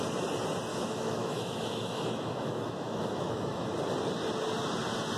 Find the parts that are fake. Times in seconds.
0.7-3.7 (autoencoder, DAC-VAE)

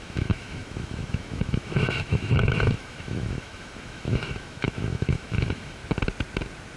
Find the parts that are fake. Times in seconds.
0.0-5.8 (autoencoder, DAC-VAE)

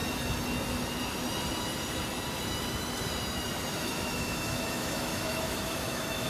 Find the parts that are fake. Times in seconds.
3.8-6.3 (autoencoder, DAC-VAE)

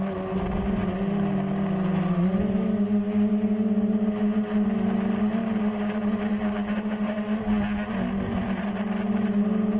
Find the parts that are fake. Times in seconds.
6.7-7.4 (autoencoder, DAC-VAE)

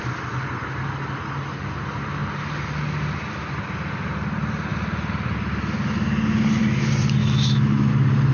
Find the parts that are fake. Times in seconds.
7.2-7.9 (autoencoder, DAC-VAE)

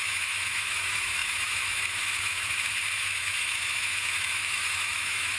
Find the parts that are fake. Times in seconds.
0.0-5.4 (autoencoder, DAC-VAE)

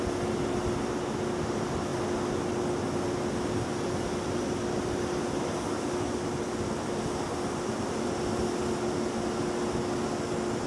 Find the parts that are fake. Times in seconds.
none